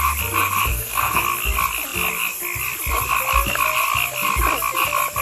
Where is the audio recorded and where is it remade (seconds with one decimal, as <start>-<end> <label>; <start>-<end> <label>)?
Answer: 0.0-0.7 recorded; 0.7-1.2 remade; 1.2-5.2 recorded